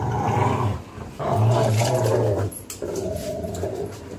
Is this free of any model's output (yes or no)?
no